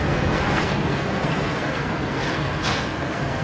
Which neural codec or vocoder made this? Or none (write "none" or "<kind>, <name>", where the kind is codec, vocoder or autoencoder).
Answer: codec, SNAC